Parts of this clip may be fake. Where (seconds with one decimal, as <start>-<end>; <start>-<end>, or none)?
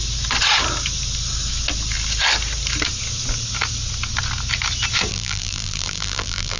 5.1-6.6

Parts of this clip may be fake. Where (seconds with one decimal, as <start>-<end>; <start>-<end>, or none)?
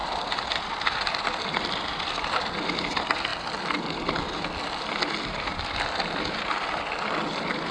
0.0-2.5; 5.5-6.6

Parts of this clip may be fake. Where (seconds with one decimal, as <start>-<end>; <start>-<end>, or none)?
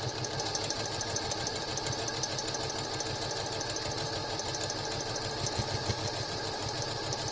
0.0-2.4; 3.6-7.3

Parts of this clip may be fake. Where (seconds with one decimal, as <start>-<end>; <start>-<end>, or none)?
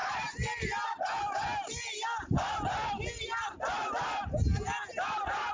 none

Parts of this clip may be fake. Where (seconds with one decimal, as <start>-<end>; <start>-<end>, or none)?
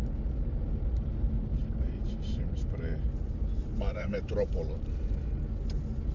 1.6-5.3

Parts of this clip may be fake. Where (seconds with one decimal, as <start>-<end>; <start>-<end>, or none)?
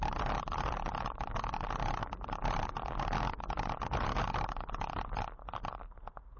0.0-6.4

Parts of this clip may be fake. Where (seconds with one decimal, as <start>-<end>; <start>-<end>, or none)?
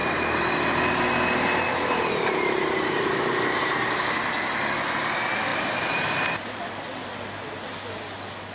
0.0-1.0; 1.7-4.0; 5.5-6.8